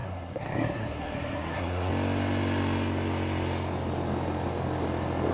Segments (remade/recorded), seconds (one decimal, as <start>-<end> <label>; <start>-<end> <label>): 0.0-1.9 remade; 1.9-5.3 recorded